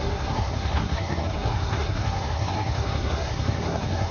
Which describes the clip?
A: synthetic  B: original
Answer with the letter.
A